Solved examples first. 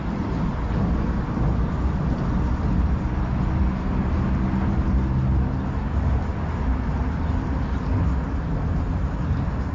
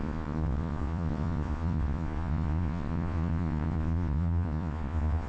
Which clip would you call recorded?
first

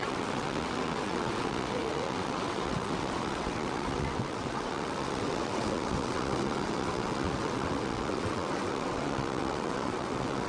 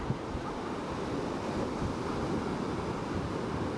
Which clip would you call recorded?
second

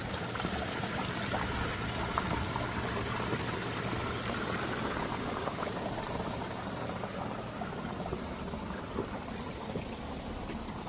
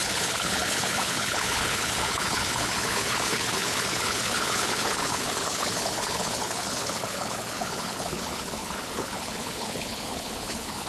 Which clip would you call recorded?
first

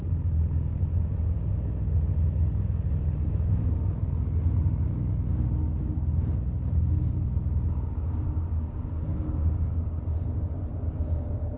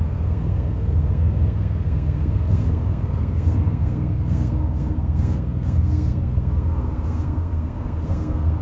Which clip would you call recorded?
first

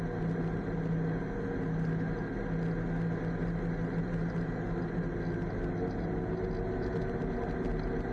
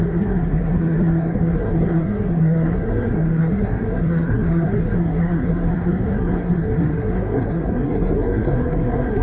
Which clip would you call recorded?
first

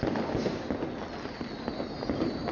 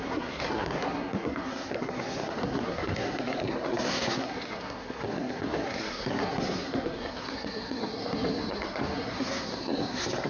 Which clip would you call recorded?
first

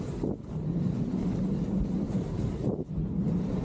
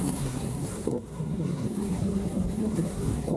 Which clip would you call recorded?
first